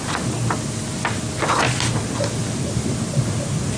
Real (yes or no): yes